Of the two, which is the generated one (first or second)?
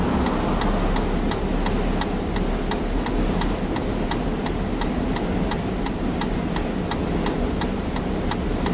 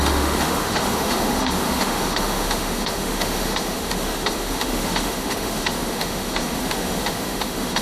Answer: second